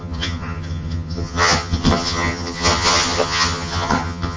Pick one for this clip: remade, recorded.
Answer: remade